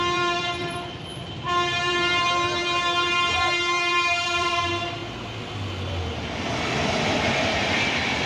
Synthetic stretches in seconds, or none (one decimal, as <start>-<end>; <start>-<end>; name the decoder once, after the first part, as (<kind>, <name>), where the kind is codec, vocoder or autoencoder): 0.0-1.1 (vocoder, BigVGAN v2); 1.8-5.0; 5.9-8.3